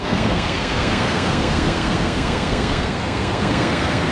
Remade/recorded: remade